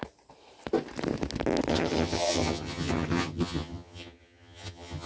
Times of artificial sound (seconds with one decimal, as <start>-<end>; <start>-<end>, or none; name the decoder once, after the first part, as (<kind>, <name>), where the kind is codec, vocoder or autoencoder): 1.7-5.1 (vocoder, HiFi-GAN)